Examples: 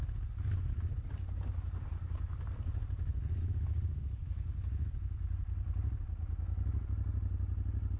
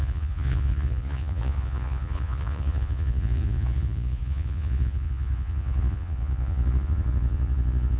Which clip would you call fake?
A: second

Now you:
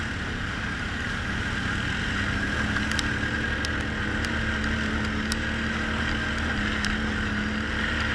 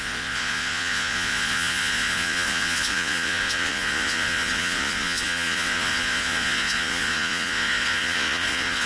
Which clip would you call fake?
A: second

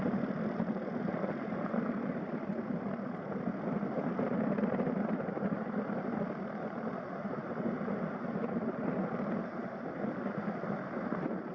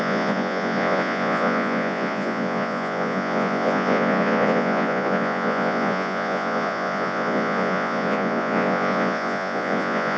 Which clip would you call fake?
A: second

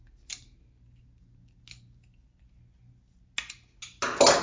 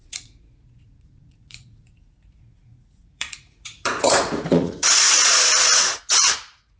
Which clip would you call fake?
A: second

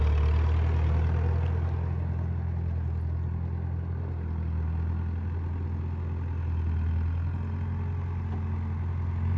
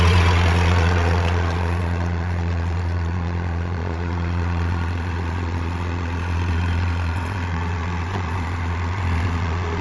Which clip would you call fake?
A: second